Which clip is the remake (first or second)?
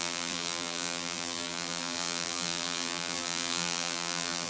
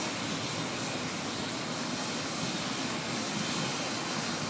first